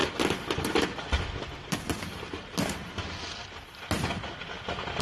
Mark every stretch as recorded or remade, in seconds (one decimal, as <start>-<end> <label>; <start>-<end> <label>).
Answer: 0.0-5.0 recorded